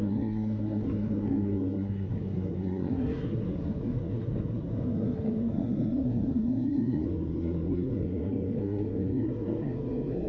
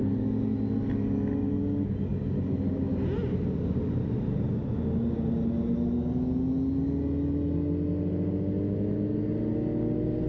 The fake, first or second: first